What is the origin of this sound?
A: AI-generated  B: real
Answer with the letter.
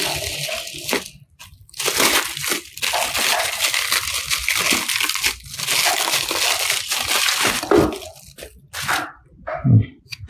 B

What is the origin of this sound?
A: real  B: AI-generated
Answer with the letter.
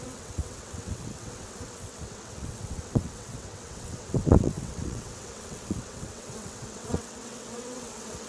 B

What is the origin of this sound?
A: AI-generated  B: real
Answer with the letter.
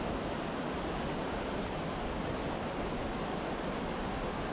B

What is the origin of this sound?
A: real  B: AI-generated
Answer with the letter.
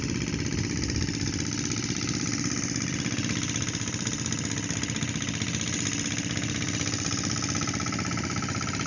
A